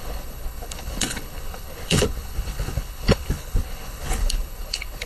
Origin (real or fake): fake